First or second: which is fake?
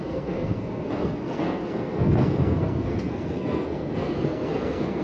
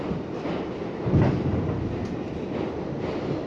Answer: first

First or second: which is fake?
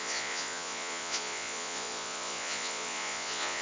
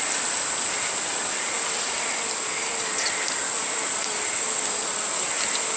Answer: first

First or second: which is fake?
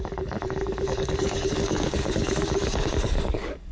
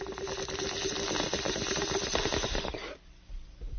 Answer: first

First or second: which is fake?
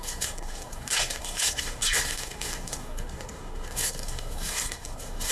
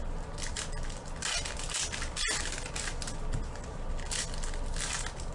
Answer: first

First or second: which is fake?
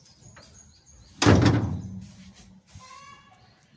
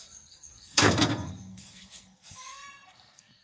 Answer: second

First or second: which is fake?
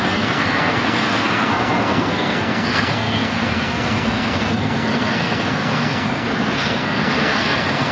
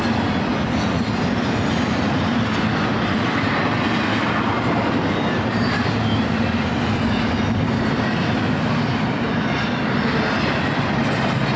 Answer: first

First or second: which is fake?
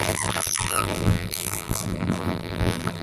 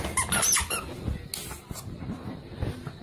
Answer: first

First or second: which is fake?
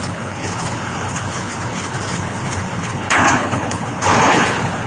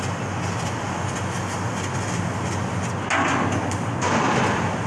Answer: first